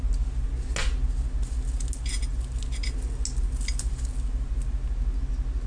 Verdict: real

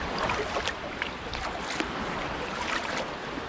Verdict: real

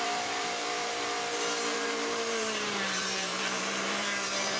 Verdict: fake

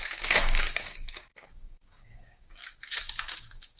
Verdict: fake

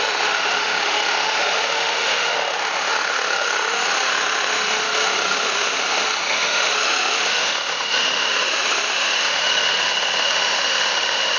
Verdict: fake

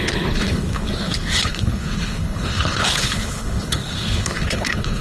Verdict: fake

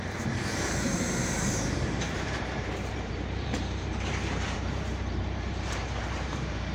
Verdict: fake